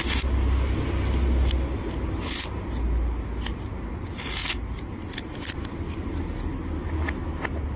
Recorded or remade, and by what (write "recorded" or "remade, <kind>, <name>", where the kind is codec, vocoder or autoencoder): recorded